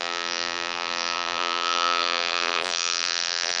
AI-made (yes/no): yes